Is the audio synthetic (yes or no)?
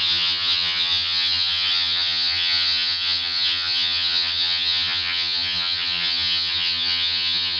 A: yes